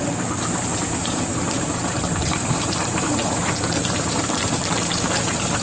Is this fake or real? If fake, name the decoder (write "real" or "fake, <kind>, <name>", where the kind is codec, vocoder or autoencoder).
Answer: fake, vocoder, BigVGAN v2